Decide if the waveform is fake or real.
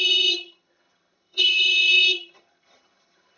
fake